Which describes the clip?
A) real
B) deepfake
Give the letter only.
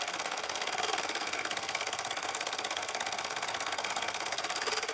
B